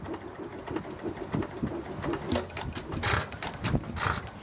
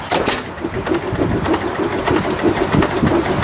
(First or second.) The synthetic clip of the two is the first